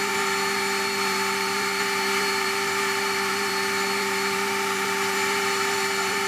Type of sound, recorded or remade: remade